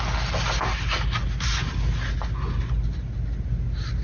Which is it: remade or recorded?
recorded